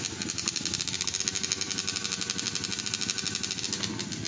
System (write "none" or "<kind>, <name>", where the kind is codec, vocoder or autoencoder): none